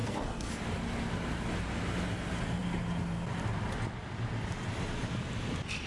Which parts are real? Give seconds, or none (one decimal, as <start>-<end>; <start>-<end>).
0.5-5.9